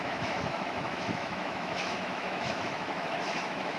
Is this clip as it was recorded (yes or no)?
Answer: no